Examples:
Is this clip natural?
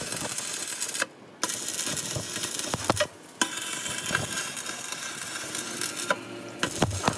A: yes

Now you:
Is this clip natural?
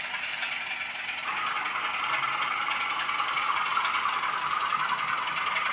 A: yes